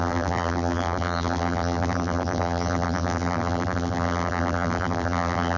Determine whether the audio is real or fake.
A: fake